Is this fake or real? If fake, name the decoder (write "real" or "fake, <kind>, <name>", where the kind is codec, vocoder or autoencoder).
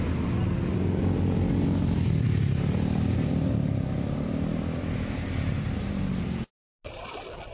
real